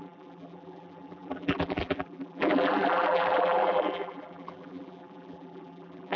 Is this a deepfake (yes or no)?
yes